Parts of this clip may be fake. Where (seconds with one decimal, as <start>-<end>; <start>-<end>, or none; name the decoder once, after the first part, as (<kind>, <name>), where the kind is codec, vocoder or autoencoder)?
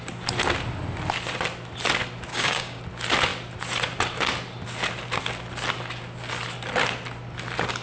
2.3-2.8 (codec, DAC)